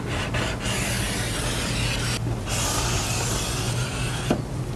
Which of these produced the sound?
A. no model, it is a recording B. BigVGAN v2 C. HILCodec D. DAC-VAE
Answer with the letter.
A